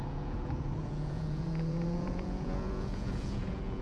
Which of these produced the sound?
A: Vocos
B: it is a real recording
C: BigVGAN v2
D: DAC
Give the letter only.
A